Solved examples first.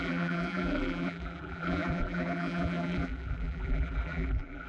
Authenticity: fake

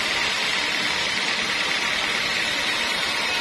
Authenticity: real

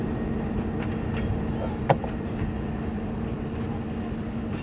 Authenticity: real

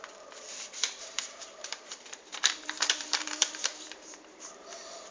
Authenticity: fake